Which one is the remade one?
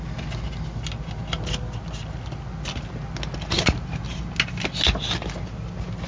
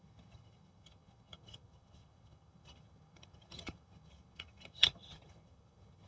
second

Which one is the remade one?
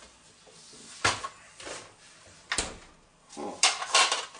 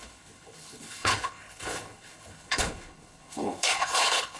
second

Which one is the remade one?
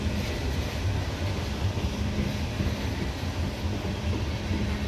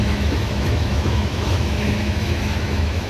second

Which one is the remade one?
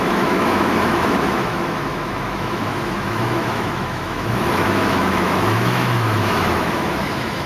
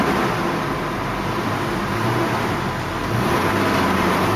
first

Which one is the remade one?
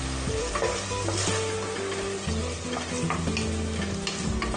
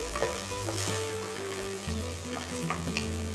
second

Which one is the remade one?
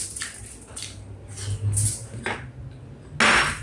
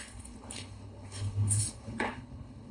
second